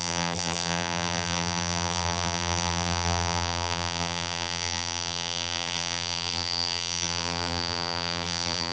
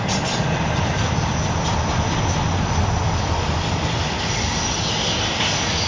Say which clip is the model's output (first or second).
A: first